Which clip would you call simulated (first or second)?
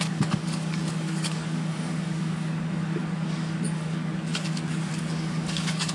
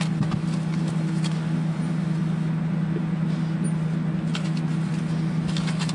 first